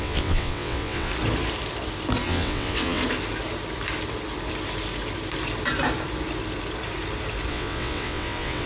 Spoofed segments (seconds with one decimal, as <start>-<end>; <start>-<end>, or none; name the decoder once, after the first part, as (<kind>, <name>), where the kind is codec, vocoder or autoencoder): 0.0-1.1 (vocoder, WaveNeXt); 2.2-3.0; 7.5-8.7